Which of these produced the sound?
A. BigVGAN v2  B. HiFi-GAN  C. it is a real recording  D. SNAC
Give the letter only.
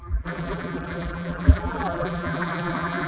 A